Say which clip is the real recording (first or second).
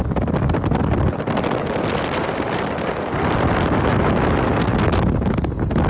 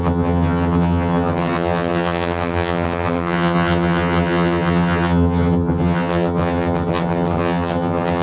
first